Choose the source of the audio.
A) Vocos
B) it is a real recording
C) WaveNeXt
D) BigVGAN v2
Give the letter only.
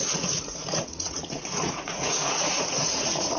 A